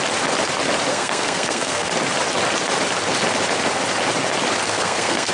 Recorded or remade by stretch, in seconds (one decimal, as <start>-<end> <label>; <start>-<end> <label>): 0.0-0.9 recorded; 0.9-1.9 remade; 1.9-4.7 recorded; 4.7-5.3 remade